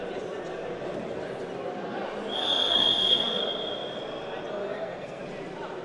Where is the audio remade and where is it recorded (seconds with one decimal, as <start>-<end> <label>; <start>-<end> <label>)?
0.0-2.4 recorded; 2.4-3.4 remade; 3.4-4.6 recorded; 4.6-5.2 remade; 5.2-5.8 recorded